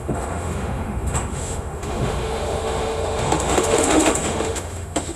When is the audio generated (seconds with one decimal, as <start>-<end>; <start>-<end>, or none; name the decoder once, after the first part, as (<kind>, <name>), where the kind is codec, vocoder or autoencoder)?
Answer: 0.0-5.2 (autoencoder, DAC-VAE)